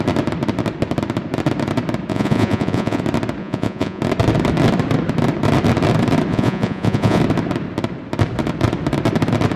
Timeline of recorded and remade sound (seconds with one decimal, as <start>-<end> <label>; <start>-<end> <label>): 0.0-2.1 recorded; 2.1-3.0 remade; 3.0-3.4 recorded; 3.4-4.0 remade; 4.0-6.3 recorded; 6.3-7.2 remade; 7.2-9.6 recorded